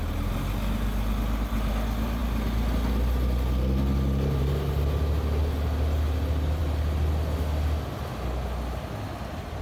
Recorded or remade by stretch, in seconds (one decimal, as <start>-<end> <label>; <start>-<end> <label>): 0.0-9.6 recorded